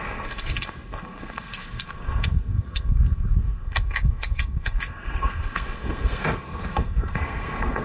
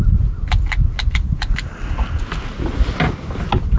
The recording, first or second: second